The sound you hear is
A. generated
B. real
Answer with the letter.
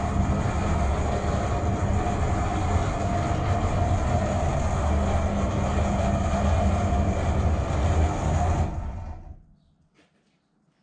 B